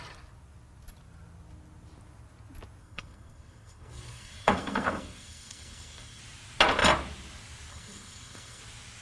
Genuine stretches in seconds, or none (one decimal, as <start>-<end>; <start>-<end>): 0.0-2.8; 6.2-7.7; 8.6-9.0